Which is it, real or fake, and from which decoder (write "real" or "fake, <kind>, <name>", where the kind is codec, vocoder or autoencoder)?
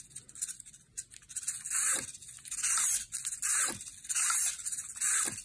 real